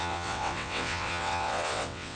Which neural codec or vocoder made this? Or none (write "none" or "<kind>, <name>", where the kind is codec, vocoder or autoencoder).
vocoder, WaveNeXt